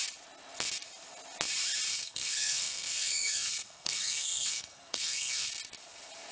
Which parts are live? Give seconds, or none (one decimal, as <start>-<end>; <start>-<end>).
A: 0.0-1.9; 5.5-6.3